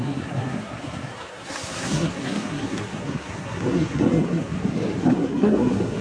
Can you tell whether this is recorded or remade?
remade